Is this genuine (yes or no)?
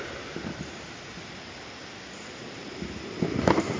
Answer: yes